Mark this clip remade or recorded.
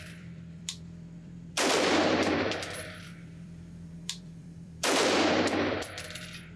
remade